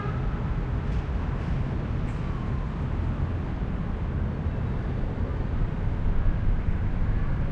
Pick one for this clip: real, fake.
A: real